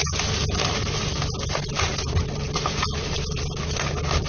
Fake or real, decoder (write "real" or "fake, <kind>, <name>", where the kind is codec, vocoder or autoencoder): real